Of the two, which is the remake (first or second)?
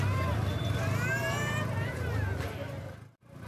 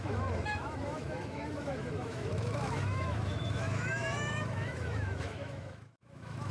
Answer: second